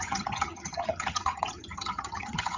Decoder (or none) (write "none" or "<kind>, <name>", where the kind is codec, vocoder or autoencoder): vocoder, HiFi-GAN